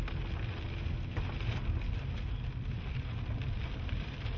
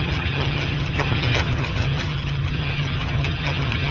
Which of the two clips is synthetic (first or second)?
second